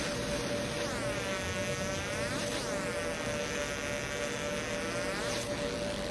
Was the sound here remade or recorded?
recorded